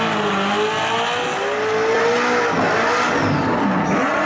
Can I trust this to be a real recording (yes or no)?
yes